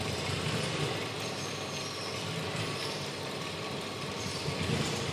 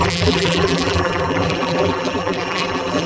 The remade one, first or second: second